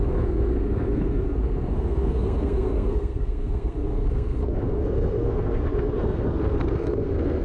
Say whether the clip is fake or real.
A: fake